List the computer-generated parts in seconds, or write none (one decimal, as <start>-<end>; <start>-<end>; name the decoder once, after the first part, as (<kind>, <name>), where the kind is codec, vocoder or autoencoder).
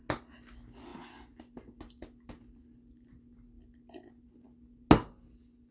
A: none